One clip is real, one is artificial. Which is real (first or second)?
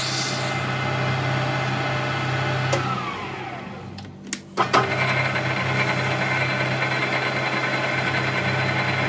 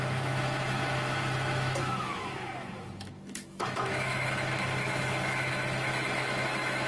first